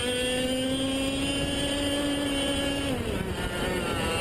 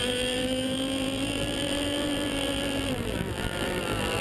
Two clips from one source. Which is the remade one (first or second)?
second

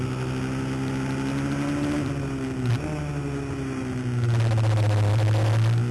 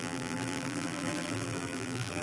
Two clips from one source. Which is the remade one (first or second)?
second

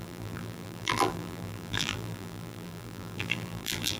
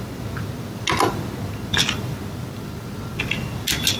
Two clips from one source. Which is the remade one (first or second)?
first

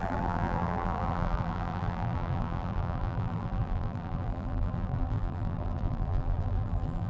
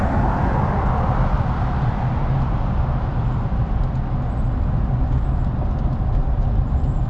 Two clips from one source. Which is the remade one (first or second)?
first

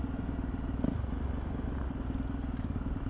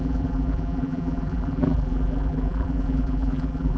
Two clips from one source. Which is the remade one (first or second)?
second